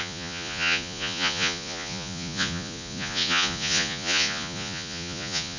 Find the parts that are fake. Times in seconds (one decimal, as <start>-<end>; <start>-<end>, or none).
0.0-5.6